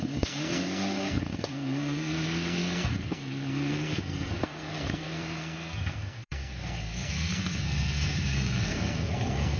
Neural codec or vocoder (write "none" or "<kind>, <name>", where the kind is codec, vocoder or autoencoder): codec, SNAC